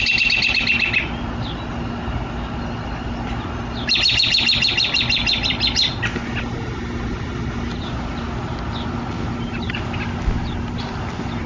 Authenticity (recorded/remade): recorded